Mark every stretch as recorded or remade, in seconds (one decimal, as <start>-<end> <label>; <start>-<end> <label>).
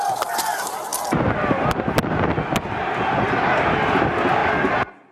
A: 0.0-5.1 recorded